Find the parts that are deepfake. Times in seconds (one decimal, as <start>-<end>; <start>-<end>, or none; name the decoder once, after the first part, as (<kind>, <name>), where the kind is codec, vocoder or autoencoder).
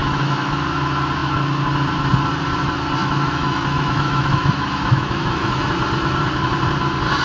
0.0-0.5 (autoencoder, DAC-VAE); 3.0-5.7